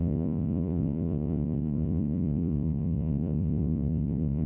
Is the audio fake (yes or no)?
yes